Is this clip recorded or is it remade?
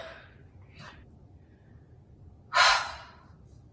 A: recorded